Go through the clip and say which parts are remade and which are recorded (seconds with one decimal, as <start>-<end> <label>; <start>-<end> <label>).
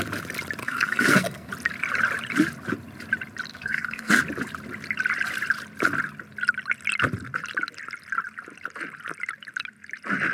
0.0-0.6 recorded; 0.6-1.5 remade; 1.5-3.5 recorded; 3.5-4.2 remade; 4.2-10.3 recorded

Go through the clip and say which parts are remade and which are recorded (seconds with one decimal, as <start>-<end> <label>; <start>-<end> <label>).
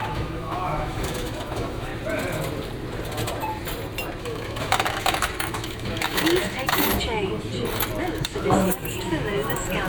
0.0-1.9 remade; 1.9-4.2 recorded; 4.2-6.9 remade; 6.9-8.0 recorded; 8.0-9.9 remade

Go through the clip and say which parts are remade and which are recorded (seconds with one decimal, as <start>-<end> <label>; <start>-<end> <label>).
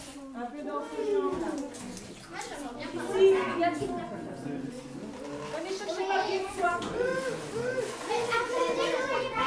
0.0-1.1 remade; 1.1-6.0 recorded; 6.0-7.1 remade; 7.1-7.9 recorded; 7.9-9.5 remade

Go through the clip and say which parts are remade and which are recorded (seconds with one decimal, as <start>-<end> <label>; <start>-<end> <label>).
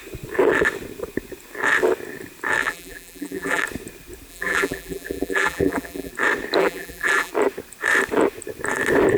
0.0-2.6 recorded; 2.6-3.6 remade; 3.6-4.3 recorded; 4.3-6.1 remade; 6.1-6.6 recorded; 6.6-7.3 remade; 7.3-9.2 recorded